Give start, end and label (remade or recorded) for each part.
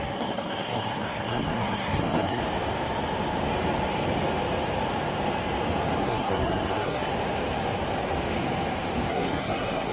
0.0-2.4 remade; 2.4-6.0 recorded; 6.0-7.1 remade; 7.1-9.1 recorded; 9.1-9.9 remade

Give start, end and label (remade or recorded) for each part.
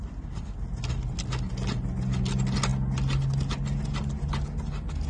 0.0-5.1 recorded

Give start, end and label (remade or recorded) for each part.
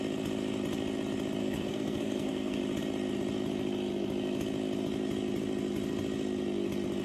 0.0-1.4 recorded; 1.4-2.6 remade; 2.6-7.0 recorded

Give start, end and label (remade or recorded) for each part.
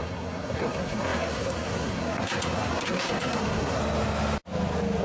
0.0-3.8 remade; 3.8-5.0 recorded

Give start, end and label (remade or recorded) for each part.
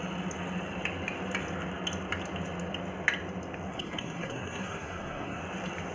0.0-3.7 recorded; 3.7-5.4 remade; 5.4-5.9 recorded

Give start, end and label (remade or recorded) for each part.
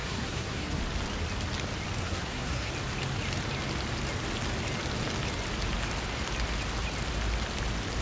0.0-0.8 remade; 0.8-2.0 recorded; 2.0-2.7 remade; 2.7-8.0 recorded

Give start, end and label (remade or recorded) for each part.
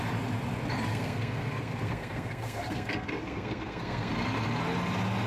0.0-0.9 recorded; 0.9-4.1 remade; 4.1-5.3 recorded